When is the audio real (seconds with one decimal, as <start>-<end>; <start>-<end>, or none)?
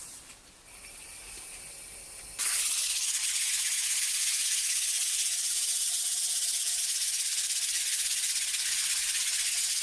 0.0-3.2; 6.8-9.8